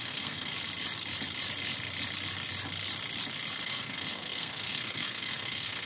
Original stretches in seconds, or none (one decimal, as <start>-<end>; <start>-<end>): 0.5-3.6